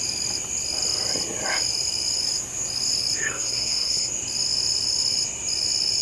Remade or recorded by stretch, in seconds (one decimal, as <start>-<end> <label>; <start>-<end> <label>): 0.0-3.2 recorded; 3.2-4.1 remade; 4.1-6.0 recorded